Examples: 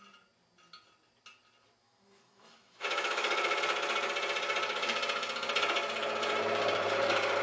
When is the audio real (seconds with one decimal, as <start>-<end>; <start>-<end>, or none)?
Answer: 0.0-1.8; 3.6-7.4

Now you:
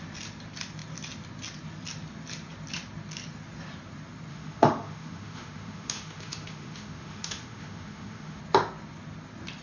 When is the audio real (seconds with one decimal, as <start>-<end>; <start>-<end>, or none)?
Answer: 0.0-4.3; 8.4-9.6

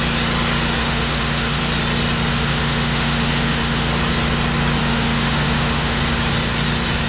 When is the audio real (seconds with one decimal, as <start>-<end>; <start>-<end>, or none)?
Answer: 0.0-0.8; 1.6-2.3; 3.9-4.8; 6.0-7.1

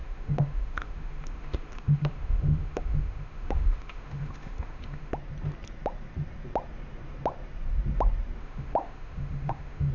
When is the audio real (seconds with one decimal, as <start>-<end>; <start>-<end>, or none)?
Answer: 5.1-8.4

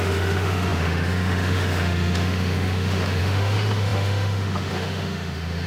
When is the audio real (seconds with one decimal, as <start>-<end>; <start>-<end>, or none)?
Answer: none

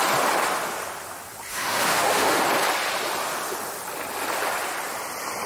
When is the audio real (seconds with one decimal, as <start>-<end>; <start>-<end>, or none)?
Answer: 0.0-1.5; 2.4-5.5

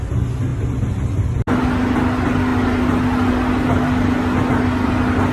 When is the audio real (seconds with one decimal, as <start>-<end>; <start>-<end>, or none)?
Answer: 0.0-5.3

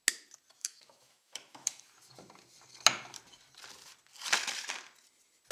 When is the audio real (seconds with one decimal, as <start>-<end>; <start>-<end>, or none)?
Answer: 0.0-0.6; 1.9-5.5